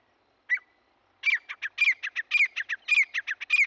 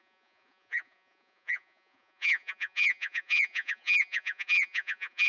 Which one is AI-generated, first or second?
second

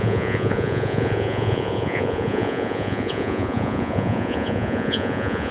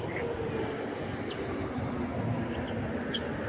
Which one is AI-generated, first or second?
first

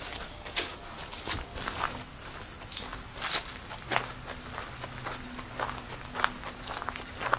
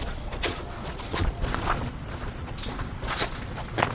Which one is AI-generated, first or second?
second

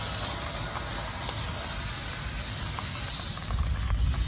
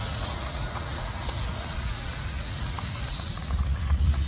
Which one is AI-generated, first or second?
second